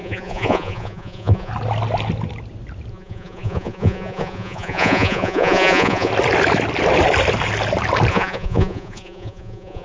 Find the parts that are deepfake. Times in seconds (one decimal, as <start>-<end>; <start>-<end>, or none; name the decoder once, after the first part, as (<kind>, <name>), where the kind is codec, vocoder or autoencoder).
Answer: 0.0-1.5 (vocoder, Vocos); 2.9-6.1; 8.1-9.8